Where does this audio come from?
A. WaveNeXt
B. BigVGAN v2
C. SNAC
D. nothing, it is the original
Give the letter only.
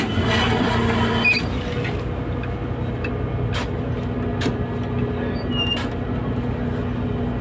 D